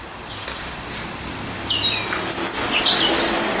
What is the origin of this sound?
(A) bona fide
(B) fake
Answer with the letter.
A